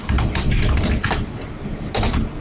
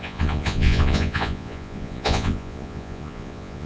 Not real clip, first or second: second